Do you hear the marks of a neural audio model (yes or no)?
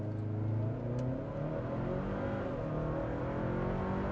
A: no